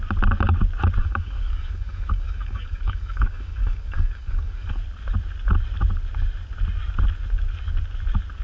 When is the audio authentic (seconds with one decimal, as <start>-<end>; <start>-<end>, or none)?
0.0-1.0; 4.8-8.4